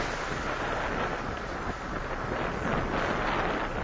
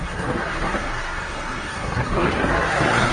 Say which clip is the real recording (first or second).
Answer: first